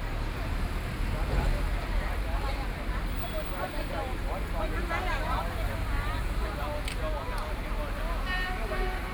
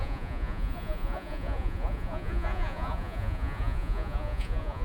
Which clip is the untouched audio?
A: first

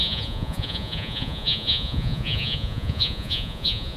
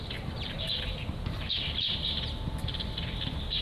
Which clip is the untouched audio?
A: second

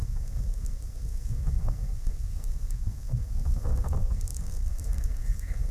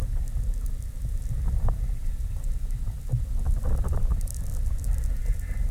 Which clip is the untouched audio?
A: second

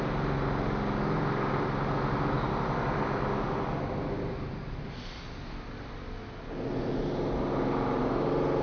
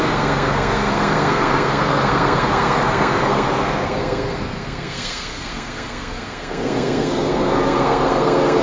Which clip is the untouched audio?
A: first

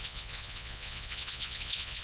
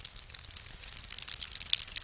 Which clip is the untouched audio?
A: second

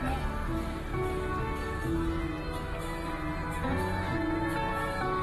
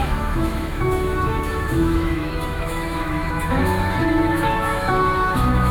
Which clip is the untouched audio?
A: first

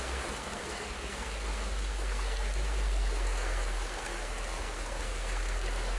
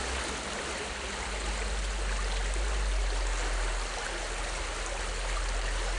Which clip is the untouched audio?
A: second